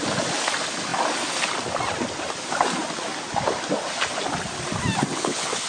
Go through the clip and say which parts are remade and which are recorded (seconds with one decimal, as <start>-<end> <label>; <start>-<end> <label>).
0.0-5.1 recorded; 5.1-5.7 remade